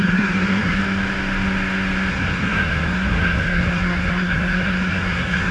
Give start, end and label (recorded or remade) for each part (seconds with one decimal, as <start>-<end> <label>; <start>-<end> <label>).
0.0-0.8 remade; 0.8-2.1 recorded; 2.1-5.5 remade